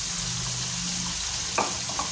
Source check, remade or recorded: recorded